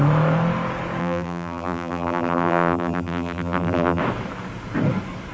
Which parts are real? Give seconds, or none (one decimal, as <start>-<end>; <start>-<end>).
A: 0.0-1.0; 4.0-5.3